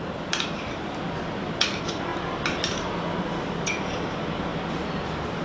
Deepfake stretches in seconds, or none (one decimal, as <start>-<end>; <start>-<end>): none